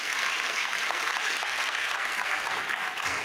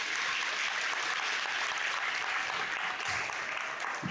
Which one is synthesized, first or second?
first